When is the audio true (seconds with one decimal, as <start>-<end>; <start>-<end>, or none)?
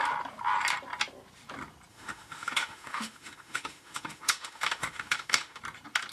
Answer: 0.0-1.9; 5.6-6.1